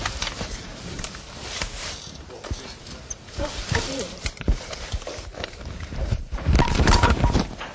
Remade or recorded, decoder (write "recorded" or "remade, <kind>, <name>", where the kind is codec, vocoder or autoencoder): remade, vocoder, BigVGAN v2